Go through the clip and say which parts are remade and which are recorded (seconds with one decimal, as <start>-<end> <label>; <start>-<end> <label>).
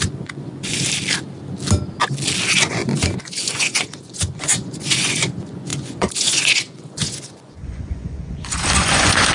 0.0-0.8 remade; 0.8-2.5 recorded; 2.5-9.3 remade